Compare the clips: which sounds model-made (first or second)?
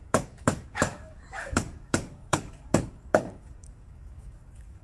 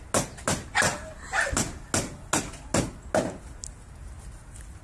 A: first